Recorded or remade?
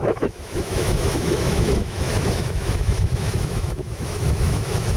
remade